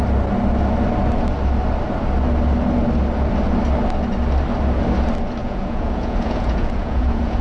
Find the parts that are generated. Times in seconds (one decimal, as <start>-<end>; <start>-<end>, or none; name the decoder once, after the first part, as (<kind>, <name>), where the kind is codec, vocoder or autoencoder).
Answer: 5.4-7.4 (vocoder, Vocos)